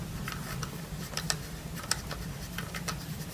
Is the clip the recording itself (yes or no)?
yes